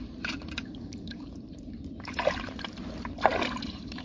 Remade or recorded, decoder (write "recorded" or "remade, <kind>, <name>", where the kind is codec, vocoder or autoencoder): remade, vocoder, BigVGAN v2